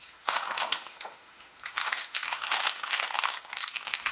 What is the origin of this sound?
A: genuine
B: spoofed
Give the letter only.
B